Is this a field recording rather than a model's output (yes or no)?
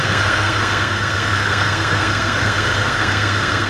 no